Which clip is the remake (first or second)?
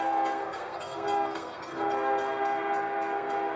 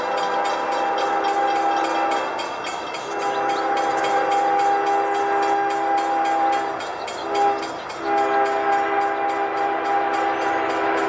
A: first